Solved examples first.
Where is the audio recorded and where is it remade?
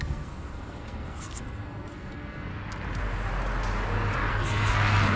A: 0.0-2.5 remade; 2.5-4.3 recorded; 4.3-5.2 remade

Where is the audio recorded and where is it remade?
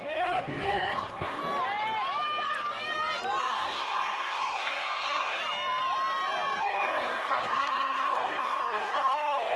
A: 0.0-1.4 remade; 1.4-3.4 recorded; 3.4-5.4 remade; 5.4-6.6 recorded; 6.6-9.6 remade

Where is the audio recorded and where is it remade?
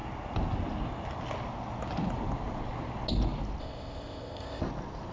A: 0.0-3.6 recorded; 3.6-4.6 remade; 4.6-5.1 recorded